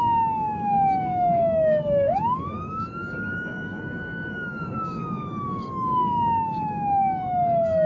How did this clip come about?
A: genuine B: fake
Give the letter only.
B